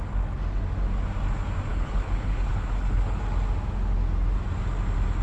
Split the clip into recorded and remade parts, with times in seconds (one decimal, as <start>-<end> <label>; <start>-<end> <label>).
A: 0.0-1.7 recorded; 1.7-3.2 remade; 3.2-5.2 recorded